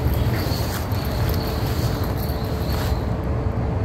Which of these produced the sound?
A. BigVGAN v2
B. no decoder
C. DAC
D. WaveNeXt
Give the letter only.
B